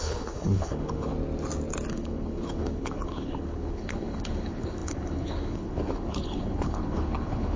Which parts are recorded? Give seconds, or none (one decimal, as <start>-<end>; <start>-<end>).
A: 1.1-1.9